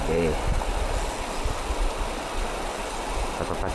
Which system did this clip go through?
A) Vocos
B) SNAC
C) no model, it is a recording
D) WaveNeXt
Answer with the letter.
C